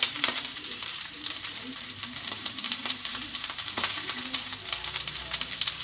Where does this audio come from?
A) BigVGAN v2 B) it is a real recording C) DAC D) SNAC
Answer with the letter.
A